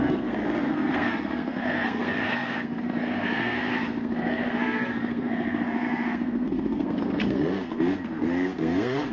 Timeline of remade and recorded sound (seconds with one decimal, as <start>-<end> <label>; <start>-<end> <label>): 0.0-9.1 remade